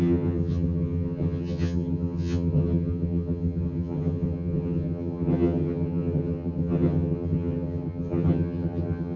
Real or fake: fake